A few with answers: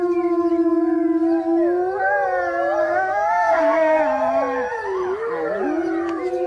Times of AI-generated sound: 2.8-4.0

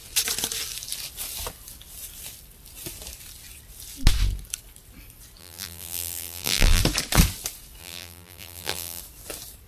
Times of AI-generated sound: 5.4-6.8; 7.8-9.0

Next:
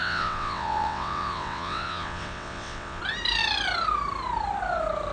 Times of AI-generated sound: 0.0-3.0